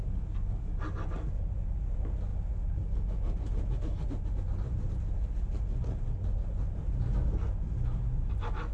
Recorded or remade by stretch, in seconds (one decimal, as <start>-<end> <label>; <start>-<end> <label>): 0.0-8.7 recorded